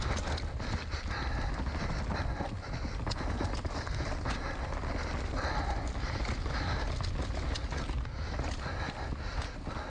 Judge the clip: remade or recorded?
recorded